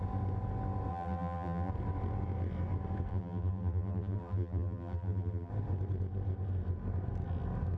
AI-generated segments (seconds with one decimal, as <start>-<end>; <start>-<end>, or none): 0.9-1.7; 3.1-5.5